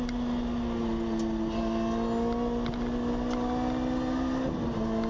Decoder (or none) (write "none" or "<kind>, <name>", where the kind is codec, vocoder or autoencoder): none